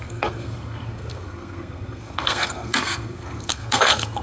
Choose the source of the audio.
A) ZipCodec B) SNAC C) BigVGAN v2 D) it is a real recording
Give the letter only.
B